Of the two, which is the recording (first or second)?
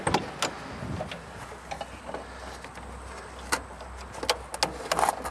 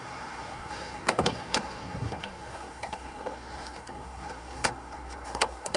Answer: first